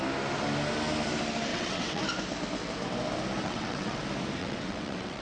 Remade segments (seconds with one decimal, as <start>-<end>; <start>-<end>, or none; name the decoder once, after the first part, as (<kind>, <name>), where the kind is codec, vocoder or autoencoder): 1.5-2.0 (vocoder, WaveNeXt); 3.4-4.0; 4.4-5.2